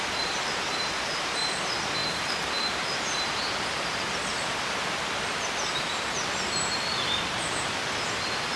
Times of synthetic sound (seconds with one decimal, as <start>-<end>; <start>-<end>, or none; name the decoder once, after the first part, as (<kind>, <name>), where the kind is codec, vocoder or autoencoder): none